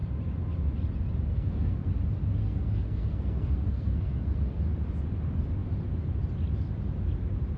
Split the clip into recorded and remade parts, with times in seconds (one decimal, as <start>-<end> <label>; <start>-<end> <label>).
0.0-1.3 recorded; 1.3-1.9 remade; 1.9-2.4 recorded; 2.4-4.6 remade; 4.6-7.6 recorded